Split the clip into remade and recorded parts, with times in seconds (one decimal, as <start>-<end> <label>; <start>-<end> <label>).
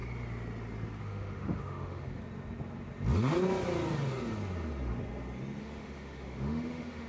0.0-1.0 recorded; 1.0-2.2 remade; 2.2-5.6 recorded; 5.6-7.1 remade